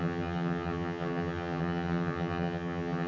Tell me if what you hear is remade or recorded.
remade